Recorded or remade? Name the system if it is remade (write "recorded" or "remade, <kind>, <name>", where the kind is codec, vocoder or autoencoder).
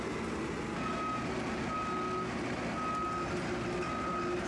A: recorded